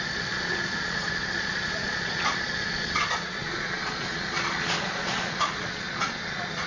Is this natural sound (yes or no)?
no